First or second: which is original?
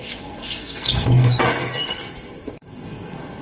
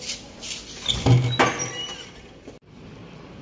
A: second